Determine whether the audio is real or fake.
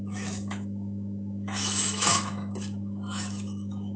fake